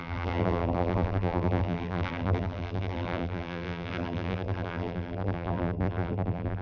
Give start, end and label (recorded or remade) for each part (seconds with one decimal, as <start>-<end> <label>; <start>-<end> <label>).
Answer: 0.0-6.6 remade